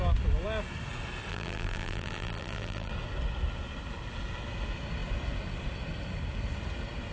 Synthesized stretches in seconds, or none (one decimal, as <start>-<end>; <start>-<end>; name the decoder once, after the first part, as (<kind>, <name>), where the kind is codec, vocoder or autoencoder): 1.3-2.9 (vocoder, BigVGAN v2)

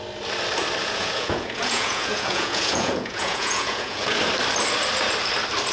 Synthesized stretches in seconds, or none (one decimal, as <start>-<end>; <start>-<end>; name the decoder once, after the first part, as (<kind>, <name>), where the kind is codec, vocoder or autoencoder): 0.8-4.2 (vocoder, Vocos)

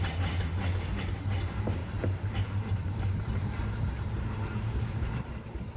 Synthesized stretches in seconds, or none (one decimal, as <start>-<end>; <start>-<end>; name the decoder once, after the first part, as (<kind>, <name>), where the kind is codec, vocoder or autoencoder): 1.8-5.3 (vocoder, BigVGAN v2)